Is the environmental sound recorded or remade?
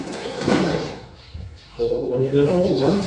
remade